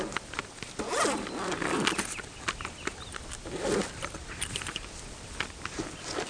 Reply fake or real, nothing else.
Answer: real